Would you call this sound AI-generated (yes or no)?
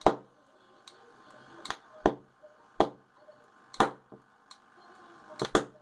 no